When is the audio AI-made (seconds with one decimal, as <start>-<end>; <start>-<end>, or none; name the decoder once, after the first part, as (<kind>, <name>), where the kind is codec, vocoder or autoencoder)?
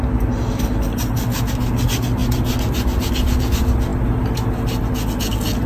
none